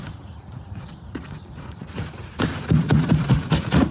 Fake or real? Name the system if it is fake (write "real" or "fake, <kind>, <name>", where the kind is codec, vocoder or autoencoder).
fake, vocoder, Vocos